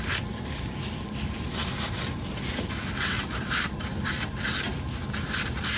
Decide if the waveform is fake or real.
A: fake